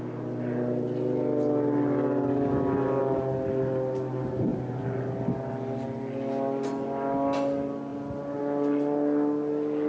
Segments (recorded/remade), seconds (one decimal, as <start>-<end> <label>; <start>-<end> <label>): 0.0-9.9 recorded